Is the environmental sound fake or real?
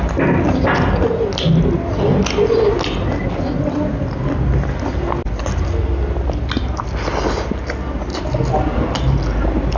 real